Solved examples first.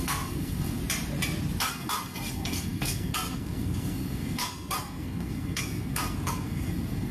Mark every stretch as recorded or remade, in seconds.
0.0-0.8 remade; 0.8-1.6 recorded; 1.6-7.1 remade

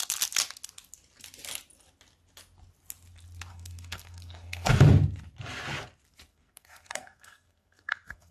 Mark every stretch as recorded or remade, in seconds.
0.0-3.5 recorded; 3.5-4.7 remade; 4.7-6.3 recorded; 6.3-8.3 remade

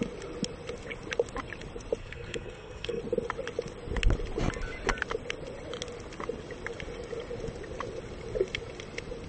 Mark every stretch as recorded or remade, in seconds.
0.0-2.0 recorded; 2.0-3.0 remade; 3.0-9.3 recorded

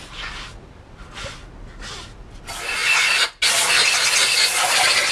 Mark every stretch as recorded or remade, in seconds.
0.0-5.1 recorded

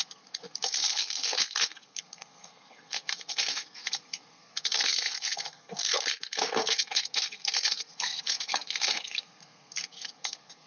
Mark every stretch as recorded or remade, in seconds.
0.0-10.7 remade

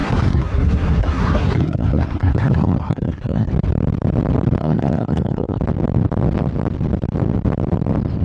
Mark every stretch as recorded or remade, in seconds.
0.0-3.5 remade; 3.5-4.6 recorded; 4.6-5.6 remade; 5.6-8.2 recorded

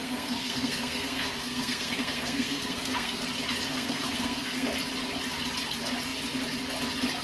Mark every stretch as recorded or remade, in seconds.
0.0-3.2 remade; 3.2-3.7 recorded; 3.7-4.7 remade; 4.7-7.2 recorded

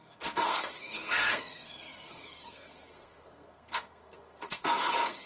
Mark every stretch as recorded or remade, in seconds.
0.0-5.3 remade